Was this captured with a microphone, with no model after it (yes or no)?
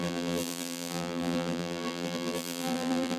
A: no